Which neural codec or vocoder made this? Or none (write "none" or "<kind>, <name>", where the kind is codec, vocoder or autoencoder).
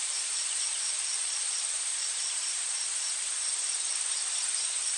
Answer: vocoder, BigVGAN v2